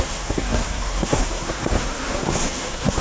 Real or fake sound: fake